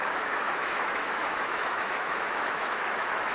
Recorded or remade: remade